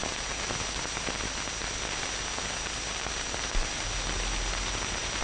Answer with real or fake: real